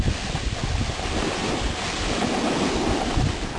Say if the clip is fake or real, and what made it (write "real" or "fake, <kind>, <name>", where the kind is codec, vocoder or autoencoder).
real